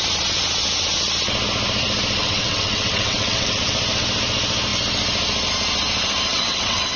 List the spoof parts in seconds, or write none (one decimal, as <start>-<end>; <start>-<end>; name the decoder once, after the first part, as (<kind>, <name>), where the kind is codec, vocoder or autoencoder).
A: 2.2-3.7 (vocoder, WaveNeXt); 6.3-7.0